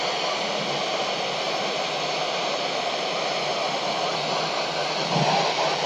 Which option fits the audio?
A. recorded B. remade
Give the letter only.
A